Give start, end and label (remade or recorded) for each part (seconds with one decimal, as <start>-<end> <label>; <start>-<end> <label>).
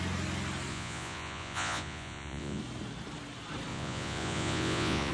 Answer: 0.0-0.7 recorded; 0.7-2.6 remade; 2.6-3.7 recorded; 3.7-5.1 remade